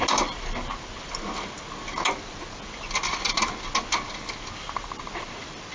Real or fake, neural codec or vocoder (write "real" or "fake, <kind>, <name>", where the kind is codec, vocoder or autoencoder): real